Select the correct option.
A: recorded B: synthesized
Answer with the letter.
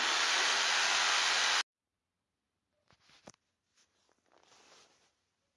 A